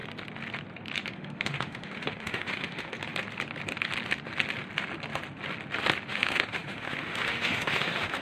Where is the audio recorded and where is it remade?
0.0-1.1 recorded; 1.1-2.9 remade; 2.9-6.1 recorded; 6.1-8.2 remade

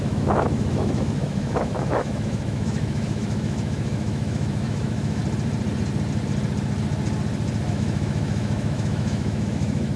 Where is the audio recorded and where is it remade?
0.0-5.2 remade; 5.2-7.7 recorded; 7.7-10.0 remade